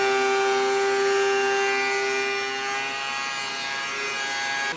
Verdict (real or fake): real